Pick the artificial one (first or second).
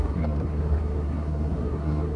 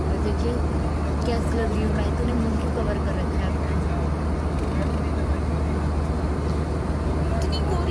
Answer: first